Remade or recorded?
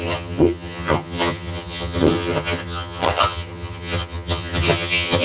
remade